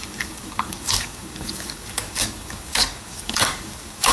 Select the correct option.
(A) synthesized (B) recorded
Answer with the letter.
A